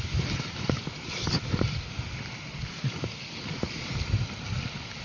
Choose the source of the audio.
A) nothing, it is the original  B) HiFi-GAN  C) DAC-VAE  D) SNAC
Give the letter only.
A